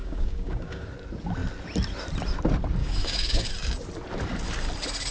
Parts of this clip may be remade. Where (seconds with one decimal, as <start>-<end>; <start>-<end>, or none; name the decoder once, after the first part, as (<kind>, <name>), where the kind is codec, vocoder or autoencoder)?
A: 0.0-0.9 (codec, DAC); 2.8-3.5